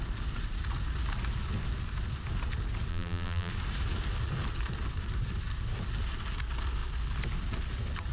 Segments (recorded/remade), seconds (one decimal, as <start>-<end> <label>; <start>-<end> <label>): 0.0-2.9 recorded; 2.9-3.5 remade; 3.5-8.1 recorded